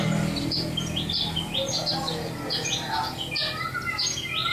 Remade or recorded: recorded